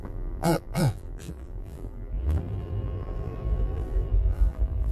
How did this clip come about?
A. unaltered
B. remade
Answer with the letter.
B